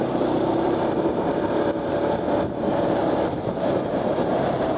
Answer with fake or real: fake